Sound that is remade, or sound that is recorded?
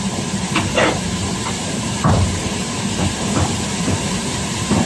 remade